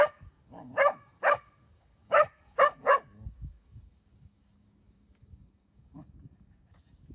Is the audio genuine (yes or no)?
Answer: no